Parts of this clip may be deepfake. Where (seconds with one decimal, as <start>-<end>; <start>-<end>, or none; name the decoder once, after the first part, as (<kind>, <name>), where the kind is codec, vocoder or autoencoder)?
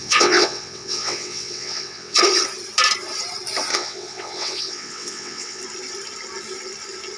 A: 0.0-2.2 (vocoder, WaveNeXt); 3.7-5.6